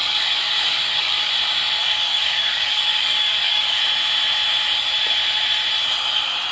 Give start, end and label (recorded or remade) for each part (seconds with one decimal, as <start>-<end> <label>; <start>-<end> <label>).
0.0-1.3 remade; 1.3-1.8 recorded; 1.8-3.8 remade; 3.8-6.5 recorded